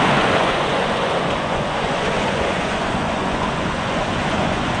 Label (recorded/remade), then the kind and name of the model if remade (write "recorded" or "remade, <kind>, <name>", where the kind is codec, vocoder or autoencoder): remade, vocoder, Vocos